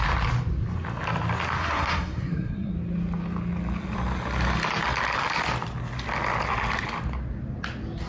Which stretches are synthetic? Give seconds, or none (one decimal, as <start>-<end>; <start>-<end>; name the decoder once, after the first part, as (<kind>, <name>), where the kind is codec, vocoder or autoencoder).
1.6-2.7 (codec, SNAC)